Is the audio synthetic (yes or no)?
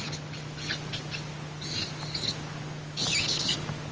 no